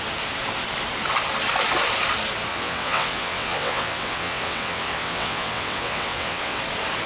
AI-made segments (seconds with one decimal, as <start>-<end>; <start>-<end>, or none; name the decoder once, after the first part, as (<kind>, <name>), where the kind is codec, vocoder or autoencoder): 2.5-6.6 (vocoder, WaveNeXt)

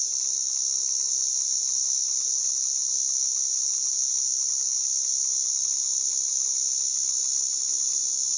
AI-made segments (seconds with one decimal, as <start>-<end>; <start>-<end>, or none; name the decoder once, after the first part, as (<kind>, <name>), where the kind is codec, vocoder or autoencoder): none

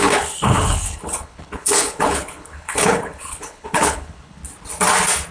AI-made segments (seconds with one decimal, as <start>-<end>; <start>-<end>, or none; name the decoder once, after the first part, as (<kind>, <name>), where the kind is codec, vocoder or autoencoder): 0.0-4.4 (codec, HILCodec)

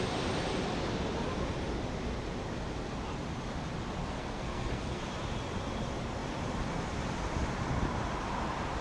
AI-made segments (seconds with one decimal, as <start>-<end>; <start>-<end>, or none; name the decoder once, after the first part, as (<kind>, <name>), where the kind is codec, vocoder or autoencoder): 4.0-5.0 (codec, SNAC)

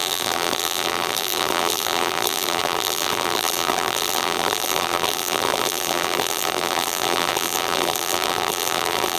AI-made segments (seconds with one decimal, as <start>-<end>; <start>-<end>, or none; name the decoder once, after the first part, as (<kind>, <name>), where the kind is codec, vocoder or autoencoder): 0.0-9.2 (vocoder, BigVGAN v2)